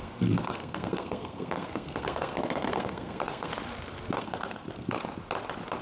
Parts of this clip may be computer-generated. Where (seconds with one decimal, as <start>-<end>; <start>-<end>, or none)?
0.0-3.5; 4.2-5.0